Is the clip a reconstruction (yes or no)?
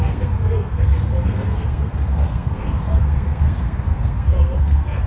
yes